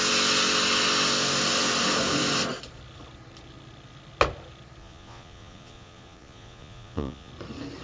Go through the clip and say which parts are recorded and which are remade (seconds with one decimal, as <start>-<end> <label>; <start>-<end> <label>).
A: 0.0-4.8 recorded; 4.8-7.3 remade; 7.3-7.8 recorded